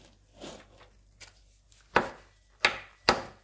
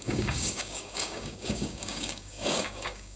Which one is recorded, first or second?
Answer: first